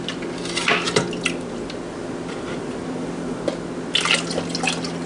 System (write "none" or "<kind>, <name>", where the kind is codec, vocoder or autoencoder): none